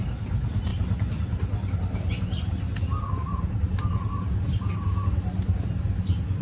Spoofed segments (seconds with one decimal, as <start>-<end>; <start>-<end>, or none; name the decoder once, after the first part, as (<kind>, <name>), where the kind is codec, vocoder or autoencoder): 5.3-5.8 (vocoder, BigVGAN v2)